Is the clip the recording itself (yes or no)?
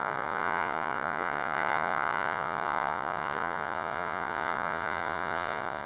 no